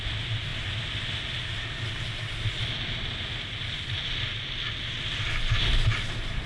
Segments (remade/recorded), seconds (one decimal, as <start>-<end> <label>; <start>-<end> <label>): 0.0-6.5 recorded